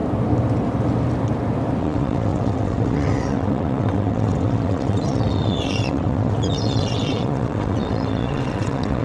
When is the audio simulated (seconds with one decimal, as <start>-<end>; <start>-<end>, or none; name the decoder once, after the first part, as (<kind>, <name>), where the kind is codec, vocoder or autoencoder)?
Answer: 1.8-9.0 (vocoder, WaveNeXt)